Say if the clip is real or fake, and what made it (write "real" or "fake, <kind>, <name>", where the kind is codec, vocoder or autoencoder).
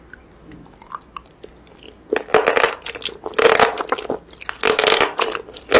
real